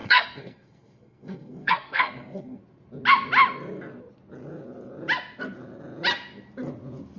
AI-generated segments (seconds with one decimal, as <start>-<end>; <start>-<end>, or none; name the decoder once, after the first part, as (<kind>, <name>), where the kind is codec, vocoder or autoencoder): 0.0-2.6 (codec, SNAC)